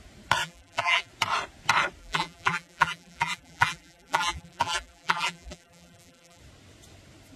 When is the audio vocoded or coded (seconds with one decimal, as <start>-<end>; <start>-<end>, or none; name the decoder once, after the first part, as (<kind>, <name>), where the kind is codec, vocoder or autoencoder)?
0.4-1.1 (vocoder, BigVGAN v2); 2.0-6.4